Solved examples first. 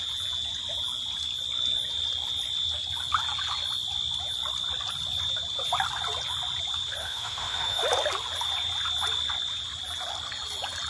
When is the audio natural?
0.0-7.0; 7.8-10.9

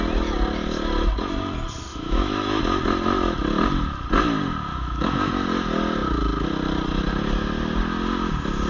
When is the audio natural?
0.0-1.9; 2.6-4.7; 5.3-8.7

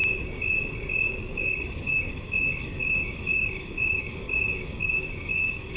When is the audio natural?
0.0-1.9

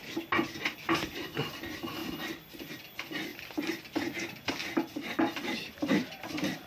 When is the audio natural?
0.0-6.7

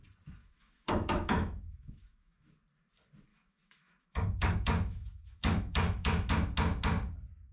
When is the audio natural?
0.0-0.4; 2.5-3.3; 6.3-7.5